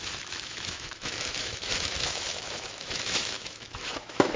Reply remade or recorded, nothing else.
remade